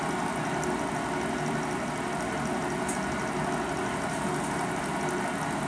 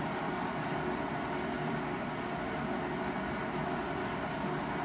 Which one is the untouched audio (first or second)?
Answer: first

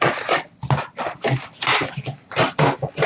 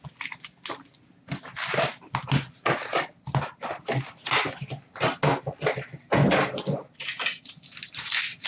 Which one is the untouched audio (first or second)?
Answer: second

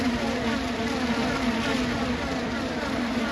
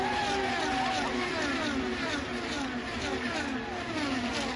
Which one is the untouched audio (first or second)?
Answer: second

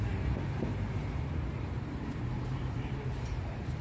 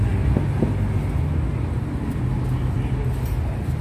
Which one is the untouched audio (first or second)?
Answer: second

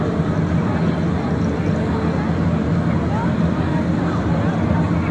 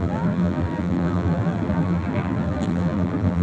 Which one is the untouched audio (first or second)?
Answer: first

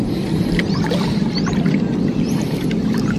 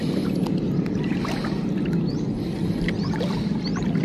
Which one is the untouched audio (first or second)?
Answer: second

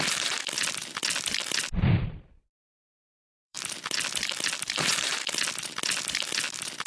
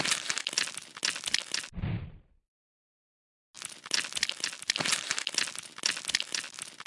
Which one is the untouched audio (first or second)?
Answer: second